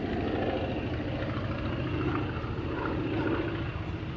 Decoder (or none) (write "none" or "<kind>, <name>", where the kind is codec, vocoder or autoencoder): none